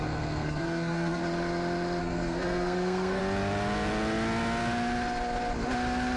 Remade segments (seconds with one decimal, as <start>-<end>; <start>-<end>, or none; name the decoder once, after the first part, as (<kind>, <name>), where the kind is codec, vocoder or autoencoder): 0.0-1.2 (codec, SNAC); 2.0-3.2